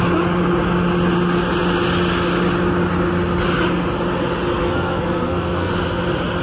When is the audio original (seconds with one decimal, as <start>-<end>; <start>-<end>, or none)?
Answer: 0.0-4.6; 5.7-6.4